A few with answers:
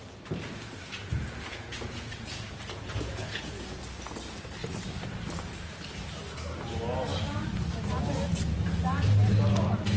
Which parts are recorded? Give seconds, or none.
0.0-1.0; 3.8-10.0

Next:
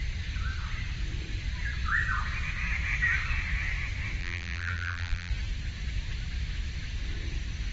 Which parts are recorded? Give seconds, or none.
0.0-4.2; 5.3-7.7

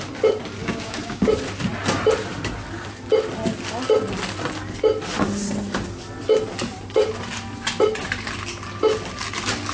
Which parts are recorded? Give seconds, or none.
0.0-0.6; 1.3-9.7

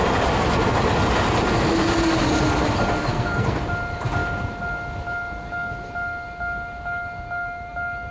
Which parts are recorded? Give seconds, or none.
0.0-3.1; 3.6-8.1